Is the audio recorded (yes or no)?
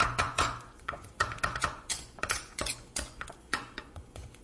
no